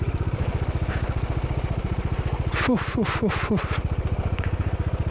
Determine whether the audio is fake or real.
real